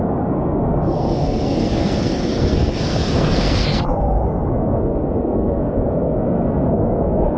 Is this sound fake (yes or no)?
yes